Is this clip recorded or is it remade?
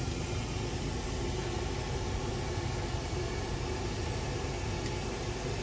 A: recorded